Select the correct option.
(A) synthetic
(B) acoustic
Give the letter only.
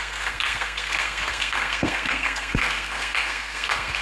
A